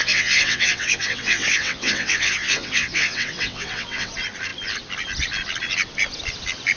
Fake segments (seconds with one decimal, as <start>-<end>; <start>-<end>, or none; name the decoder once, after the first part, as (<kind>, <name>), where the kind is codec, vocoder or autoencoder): 0.0-4.1 (vocoder, WaveNeXt)